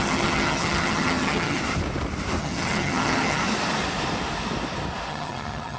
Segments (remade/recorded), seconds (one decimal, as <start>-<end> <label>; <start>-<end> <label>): 0.0-1.6 remade; 1.6-2.4 recorded; 2.4-3.4 remade; 3.4-5.1 recorded; 5.1-5.8 remade